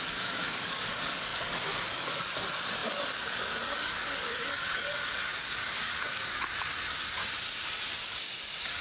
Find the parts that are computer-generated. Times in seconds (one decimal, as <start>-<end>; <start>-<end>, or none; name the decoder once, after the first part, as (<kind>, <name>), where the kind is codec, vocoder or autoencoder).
0.0-7.2 (codec, DAC); 7.9-8.8